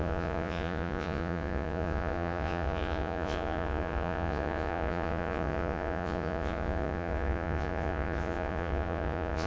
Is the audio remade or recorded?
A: remade